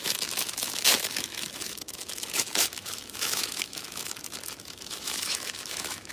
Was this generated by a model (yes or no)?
yes